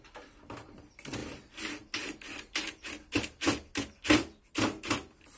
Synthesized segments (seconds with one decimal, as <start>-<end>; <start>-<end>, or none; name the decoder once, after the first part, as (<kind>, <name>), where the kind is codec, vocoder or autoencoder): none